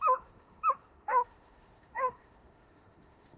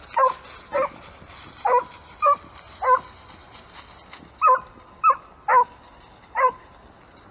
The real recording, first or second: second